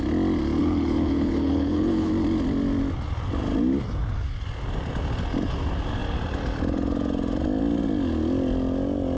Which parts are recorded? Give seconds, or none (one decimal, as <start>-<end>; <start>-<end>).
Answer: 0.0-0.6; 2.1-9.2